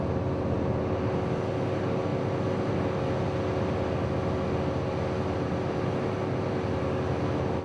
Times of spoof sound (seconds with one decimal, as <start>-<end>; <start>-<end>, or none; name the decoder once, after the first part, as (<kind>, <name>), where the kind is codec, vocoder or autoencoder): none